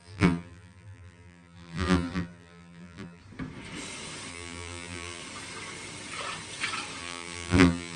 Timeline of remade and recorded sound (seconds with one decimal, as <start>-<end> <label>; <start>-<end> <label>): 0.0-3.2 remade; 3.2-4.3 recorded; 4.3-5.2 remade; 5.2-7.0 recorded; 7.0-8.0 remade